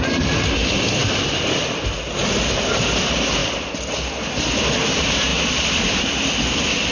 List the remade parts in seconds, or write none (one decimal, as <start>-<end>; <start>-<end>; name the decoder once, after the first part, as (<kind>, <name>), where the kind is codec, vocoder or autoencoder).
1.0-2.0 (vocoder, BigVGAN v2); 3.4-3.9; 5.3-6.0